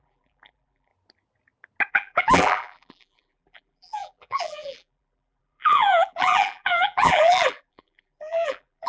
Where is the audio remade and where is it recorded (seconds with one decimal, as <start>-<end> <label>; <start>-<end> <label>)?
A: 0.0-0.9 remade; 0.9-1.9 recorded; 1.9-8.9 remade